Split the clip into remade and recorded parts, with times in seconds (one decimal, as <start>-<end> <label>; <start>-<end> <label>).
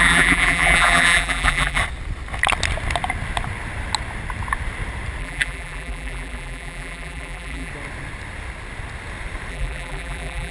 0.0-1.8 remade; 1.8-5.2 recorded; 5.2-7.7 remade; 7.7-9.5 recorded; 9.5-10.5 remade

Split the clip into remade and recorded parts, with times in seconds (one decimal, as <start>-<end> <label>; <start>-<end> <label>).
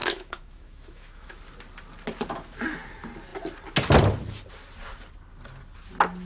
0.0-1.4 remade; 1.4-6.3 recorded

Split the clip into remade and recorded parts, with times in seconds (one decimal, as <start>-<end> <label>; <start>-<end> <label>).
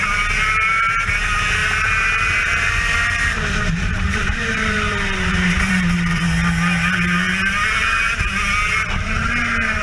0.0-1.6 recorded; 1.6-6.2 remade; 6.2-9.8 recorded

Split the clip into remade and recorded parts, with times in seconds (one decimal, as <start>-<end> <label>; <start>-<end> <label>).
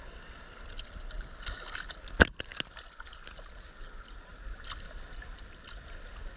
0.0-6.4 recorded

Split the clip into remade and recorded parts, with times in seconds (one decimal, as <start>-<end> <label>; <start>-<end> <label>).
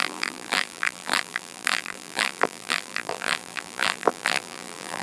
0.0-5.0 remade